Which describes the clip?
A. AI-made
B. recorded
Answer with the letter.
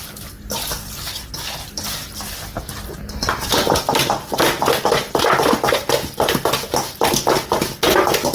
B